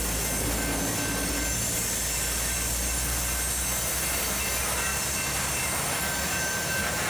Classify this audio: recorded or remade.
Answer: recorded